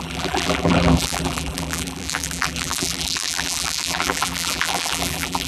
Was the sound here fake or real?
fake